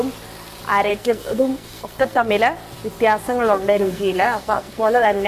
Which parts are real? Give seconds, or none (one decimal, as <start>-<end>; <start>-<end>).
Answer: 0.0-0.9; 2.3-3.2